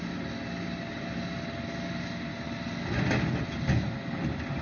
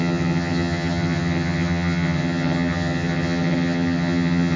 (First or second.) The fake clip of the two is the second